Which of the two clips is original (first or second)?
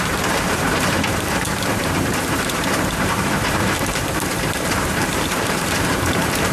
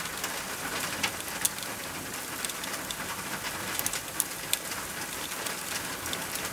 second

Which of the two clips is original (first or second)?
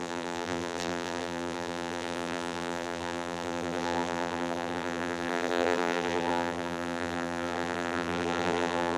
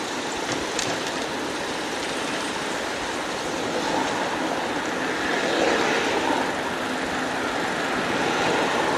second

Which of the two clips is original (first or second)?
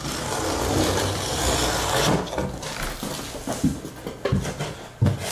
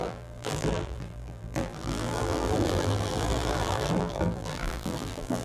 first